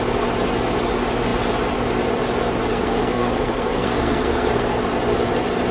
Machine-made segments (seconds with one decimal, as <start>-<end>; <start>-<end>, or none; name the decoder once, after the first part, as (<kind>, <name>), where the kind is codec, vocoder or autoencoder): 2.7-4.8 (codec, SNAC)